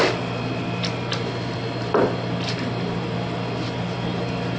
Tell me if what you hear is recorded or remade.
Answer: remade